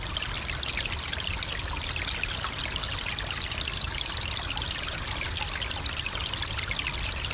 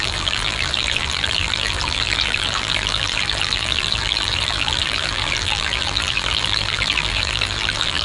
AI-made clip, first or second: second